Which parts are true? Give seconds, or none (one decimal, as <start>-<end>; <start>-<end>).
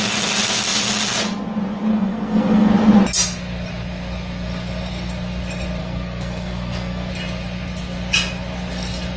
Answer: 0.0-1.9; 2.7-5.8; 7.1-9.2